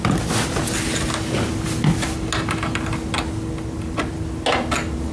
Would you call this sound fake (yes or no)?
no